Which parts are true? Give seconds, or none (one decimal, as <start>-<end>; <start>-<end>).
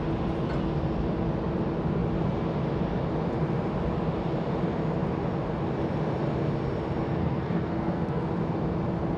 0.0-7.2; 8.2-9.2